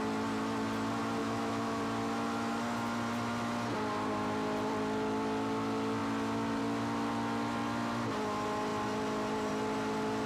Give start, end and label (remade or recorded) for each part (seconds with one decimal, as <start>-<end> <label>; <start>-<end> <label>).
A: 0.0-1.2 recorded; 1.2-1.8 remade; 1.8-10.3 recorded